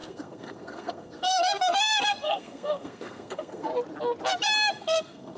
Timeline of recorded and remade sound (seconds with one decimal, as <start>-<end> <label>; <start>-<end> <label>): 0.0-3.7 remade; 3.7-4.7 recorded; 4.7-5.4 remade